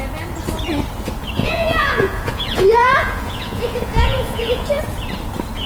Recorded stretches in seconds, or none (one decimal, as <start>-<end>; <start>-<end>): 0.0-1.4; 4.8-5.7